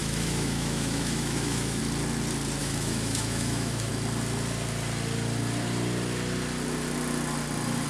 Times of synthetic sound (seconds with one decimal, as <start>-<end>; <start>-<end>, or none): 0.0-1.8; 2.6-3.9